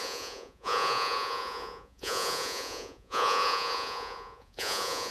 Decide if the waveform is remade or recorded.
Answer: remade